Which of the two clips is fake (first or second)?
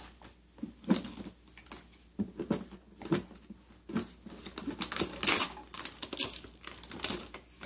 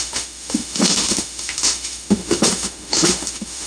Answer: second